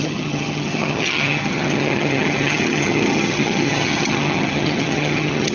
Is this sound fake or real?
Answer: fake